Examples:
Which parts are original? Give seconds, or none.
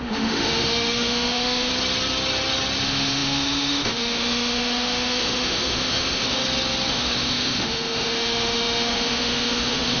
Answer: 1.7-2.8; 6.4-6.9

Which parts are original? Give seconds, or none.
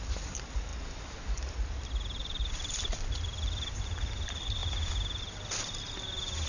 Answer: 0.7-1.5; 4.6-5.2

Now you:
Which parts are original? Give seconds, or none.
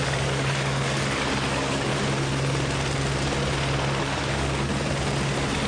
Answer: 1.9-4.0; 4.7-5.7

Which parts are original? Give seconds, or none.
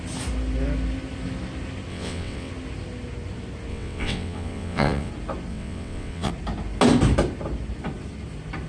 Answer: 0.0-1.9; 2.5-3.7; 5.1-5.5; 6.3-8.7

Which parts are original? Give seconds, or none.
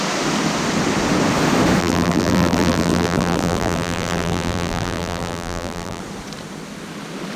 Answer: 0.0-1.8; 6.0-7.4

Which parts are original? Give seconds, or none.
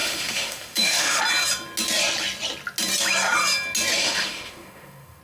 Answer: 1.2-4.0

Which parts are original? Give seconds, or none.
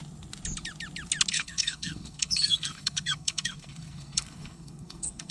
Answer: 0.0-1.3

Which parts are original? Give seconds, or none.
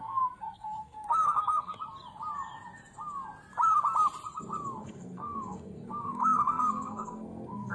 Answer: 1.7-4.8